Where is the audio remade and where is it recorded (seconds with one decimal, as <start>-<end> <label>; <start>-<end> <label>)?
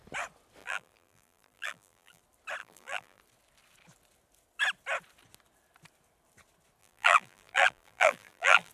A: 0.0-0.6 recorded; 0.6-2.2 remade; 2.2-2.6 recorded; 2.6-3.2 remade; 3.2-6.8 recorded; 6.8-8.7 remade